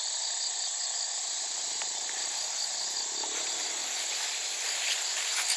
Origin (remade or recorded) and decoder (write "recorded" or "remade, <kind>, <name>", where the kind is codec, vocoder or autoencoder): recorded